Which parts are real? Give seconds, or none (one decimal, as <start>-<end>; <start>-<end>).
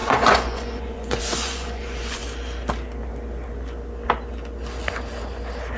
2.2-5.8